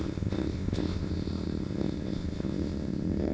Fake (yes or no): yes